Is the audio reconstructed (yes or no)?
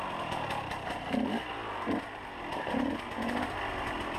no